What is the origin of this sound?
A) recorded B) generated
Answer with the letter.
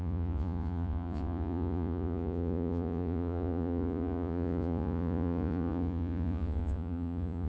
B